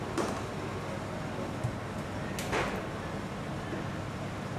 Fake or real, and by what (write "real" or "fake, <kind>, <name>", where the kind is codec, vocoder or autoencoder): real